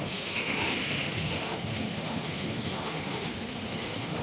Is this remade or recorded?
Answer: remade